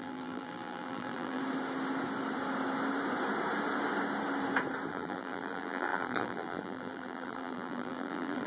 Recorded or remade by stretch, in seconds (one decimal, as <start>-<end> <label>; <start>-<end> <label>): 0.0-1.4 remade; 1.4-4.9 recorded; 4.9-8.5 remade